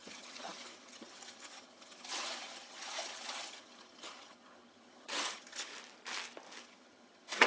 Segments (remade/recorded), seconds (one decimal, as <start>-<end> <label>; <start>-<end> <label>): 0.0-5.7 remade; 5.7-6.6 recorded; 6.6-7.5 remade